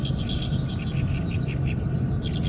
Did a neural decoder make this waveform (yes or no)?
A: no